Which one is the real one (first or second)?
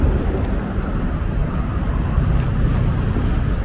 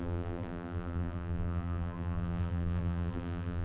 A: first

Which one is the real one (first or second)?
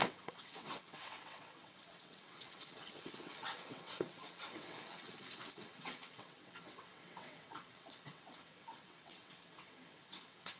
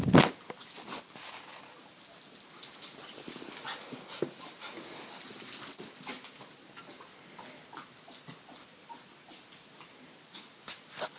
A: second